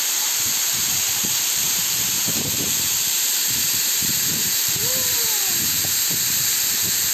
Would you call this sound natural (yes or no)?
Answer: no